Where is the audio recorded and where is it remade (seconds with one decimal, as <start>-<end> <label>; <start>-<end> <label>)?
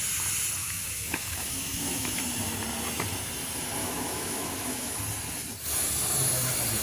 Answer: 0.0-0.6 recorded; 0.6-2.2 remade; 2.2-3.8 recorded; 3.8-5.0 remade; 5.0-6.8 recorded